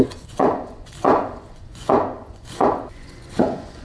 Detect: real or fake fake